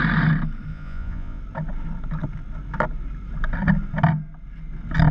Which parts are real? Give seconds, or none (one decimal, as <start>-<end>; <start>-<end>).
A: 0.0-0.7; 1.4-5.1